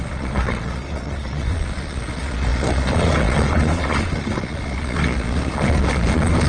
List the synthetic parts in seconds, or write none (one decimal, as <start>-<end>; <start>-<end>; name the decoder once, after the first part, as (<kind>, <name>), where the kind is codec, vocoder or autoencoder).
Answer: 0.0-6.5 (vocoder, Vocos)